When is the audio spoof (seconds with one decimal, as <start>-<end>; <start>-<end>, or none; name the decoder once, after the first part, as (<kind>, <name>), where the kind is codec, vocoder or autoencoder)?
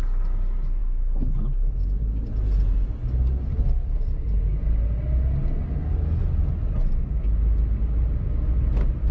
none